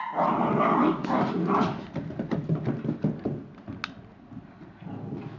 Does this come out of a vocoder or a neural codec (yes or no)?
no